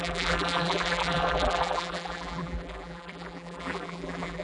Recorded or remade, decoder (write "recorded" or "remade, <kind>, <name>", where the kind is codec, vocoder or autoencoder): remade, vocoder, BigVGAN v2